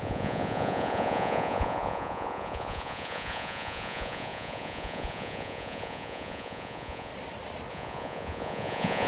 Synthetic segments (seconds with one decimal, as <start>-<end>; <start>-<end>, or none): 0.0-7.1; 7.7-9.1